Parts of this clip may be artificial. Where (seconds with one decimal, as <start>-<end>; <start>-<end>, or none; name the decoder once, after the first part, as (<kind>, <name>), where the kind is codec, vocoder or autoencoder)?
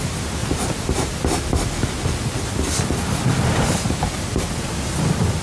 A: 0.4-1.0 (vocoder, BigVGAN v2); 3.0-4.7